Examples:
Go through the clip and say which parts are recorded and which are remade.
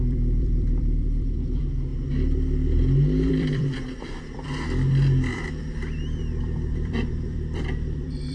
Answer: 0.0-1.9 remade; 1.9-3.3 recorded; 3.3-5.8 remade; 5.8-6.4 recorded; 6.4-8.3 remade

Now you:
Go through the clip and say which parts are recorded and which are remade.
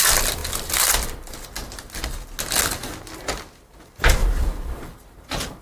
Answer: 0.0-4.2 recorded; 4.2-5.6 remade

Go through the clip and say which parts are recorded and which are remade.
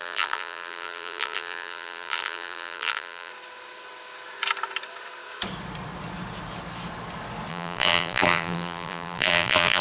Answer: 0.0-3.3 remade; 3.3-7.5 recorded; 7.5-9.8 remade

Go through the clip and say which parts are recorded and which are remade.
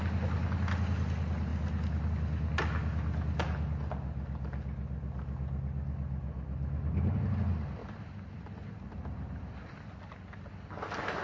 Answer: 0.0-1.5 recorded; 1.5-2.1 remade; 2.1-7.8 recorded; 7.8-10.1 remade; 10.1-11.2 recorded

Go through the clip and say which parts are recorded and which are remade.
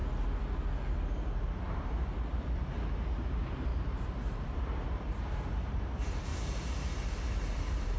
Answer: 0.0-1.6 recorded; 1.6-8.0 remade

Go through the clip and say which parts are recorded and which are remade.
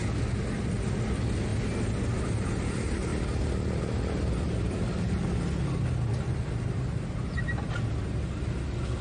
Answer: 0.0-9.0 recorded